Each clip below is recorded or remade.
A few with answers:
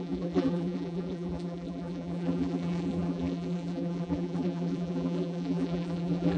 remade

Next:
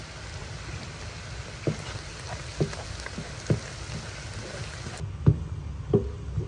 recorded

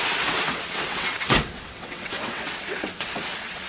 remade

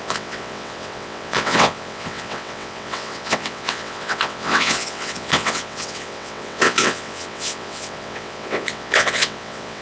remade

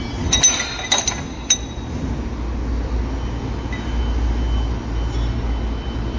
recorded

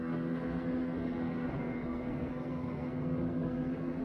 remade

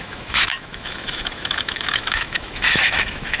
remade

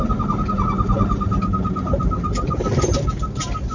recorded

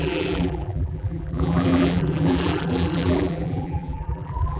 remade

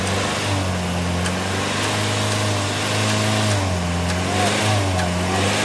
recorded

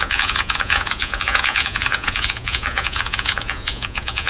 remade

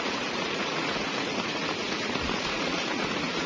remade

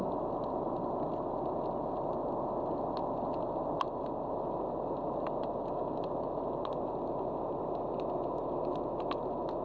recorded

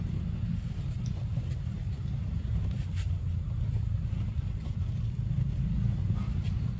recorded